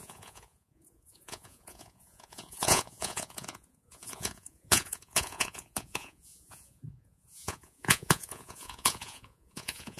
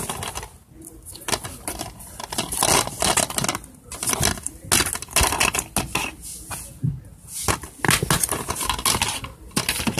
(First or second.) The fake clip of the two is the first